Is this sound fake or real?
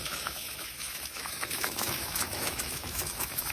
fake